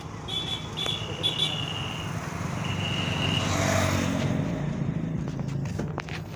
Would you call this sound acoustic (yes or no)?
yes